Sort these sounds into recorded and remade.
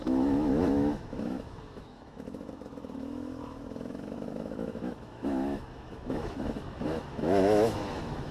remade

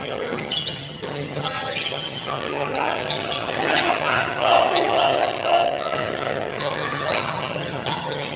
remade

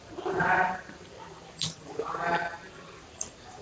remade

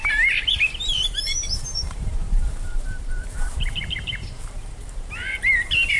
remade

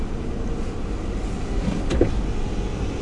recorded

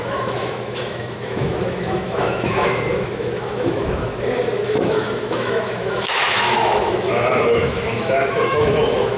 remade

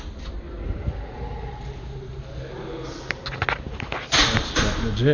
recorded